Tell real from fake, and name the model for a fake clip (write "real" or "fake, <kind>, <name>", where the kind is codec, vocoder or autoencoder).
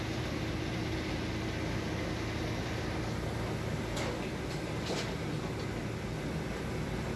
real